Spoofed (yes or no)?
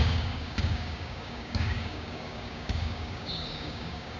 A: yes